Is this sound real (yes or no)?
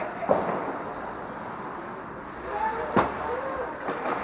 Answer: yes